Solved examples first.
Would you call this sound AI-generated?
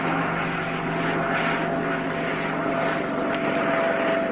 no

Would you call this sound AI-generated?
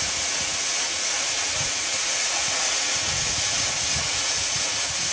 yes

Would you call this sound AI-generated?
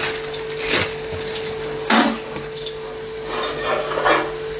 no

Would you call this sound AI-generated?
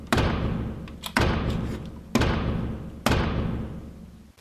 no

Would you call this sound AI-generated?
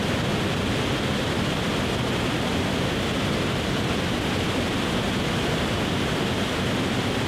no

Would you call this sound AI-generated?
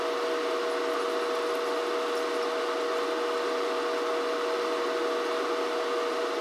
no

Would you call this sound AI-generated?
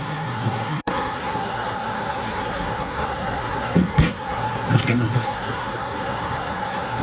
yes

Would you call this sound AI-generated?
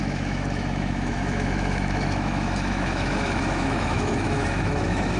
yes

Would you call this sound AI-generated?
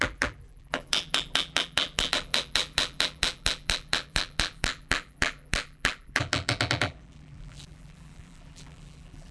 yes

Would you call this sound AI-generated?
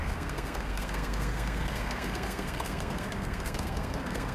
yes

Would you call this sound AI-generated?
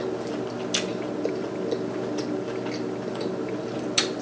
no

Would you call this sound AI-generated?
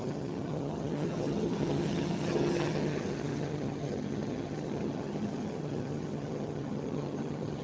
yes